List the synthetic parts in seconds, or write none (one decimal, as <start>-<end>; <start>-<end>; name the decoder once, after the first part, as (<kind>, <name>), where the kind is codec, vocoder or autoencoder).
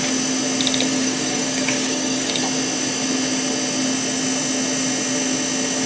0.9-2.4 (codec, DAC)